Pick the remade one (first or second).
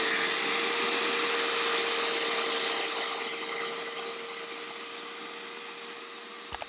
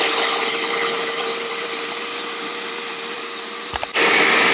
second